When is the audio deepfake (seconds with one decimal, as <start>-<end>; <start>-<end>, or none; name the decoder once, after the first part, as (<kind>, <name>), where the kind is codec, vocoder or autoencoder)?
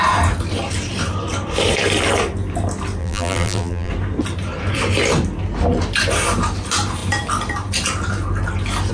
3.0-3.9 (vocoder, BigVGAN v2)